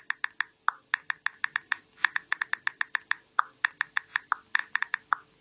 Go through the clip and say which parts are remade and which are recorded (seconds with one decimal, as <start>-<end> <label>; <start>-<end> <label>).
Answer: 0.0-5.4 recorded